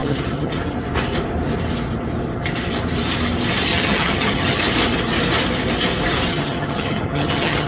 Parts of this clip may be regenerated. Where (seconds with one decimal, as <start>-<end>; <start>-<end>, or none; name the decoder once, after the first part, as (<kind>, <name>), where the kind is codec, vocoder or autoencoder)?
0.0-0.6 (vocoder, HiFi-GAN); 3.7-4.6; 6.3-7.7